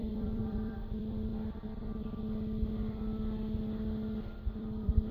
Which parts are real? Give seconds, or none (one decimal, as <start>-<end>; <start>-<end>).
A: 1.3-4.4